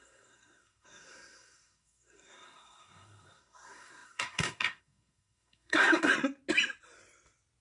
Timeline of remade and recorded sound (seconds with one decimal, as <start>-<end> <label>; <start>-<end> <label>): 0.0-6.1 remade; 6.1-7.6 recorded

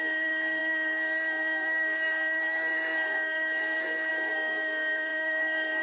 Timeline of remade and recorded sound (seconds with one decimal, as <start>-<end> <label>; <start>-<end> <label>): 0.0-5.8 remade

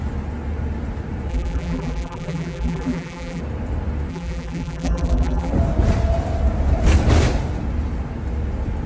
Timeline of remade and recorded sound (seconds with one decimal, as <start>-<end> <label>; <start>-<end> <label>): 0.0-1.3 recorded; 1.3-3.4 remade; 3.4-4.1 recorded; 4.1-5.5 remade; 5.5-8.9 recorded

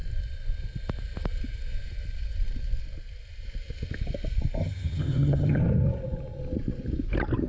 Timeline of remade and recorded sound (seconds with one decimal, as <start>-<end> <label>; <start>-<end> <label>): 0.0-4.6 recorded; 4.6-5.6 remade; 5.6-7.5 recorded

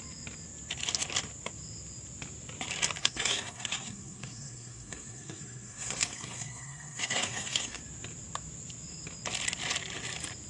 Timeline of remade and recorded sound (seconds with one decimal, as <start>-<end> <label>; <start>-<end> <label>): 0.0-3.0 recorded; 3.0-7.8 remade; 7.8-10.5 recorded

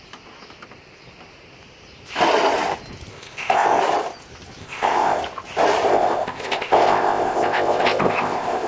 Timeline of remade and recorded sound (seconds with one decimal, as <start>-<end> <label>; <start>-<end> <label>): 0.0-3.1 recorded; 3.1-3.8 remade; 3.8-4.6 recorded; 4.6-5.2 remade; 5.2-5.9 recorded; 5.9-8.7 remade

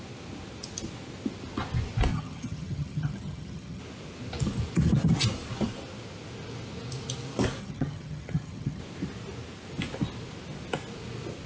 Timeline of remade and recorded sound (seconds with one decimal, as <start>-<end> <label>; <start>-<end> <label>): 0.0-2.1 recorded; 2.1-3.8 remade; 3.8-7.6 recorded; 7.6-8.8 remade; 8.8-11.5 recorded